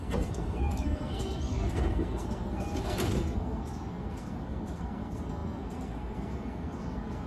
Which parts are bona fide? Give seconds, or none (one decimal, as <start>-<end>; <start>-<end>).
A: none